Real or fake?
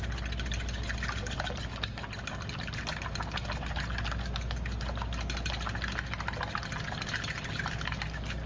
real